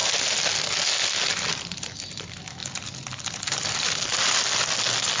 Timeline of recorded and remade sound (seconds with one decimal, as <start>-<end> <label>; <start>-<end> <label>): 0.0-5.2 recorded